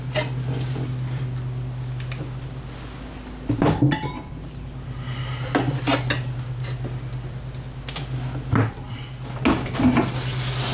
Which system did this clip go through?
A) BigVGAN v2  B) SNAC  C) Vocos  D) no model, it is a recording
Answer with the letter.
D